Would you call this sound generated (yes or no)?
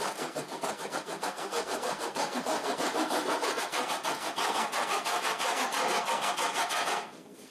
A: yes